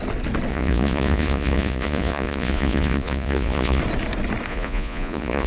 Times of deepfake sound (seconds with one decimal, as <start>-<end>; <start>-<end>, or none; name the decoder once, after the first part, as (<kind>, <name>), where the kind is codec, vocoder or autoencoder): 0.5-3.8 (vocoder, Vocos); 4.5-5.5